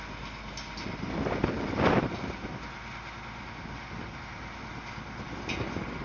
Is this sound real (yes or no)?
yes